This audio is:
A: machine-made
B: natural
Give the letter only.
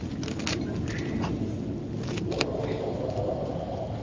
B